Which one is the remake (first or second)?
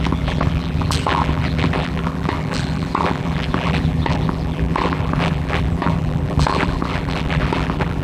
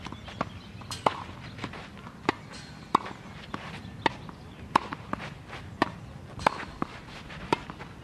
first